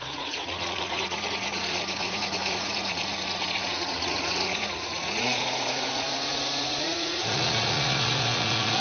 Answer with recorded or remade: remade